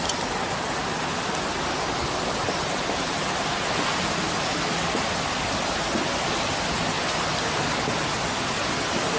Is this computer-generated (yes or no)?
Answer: no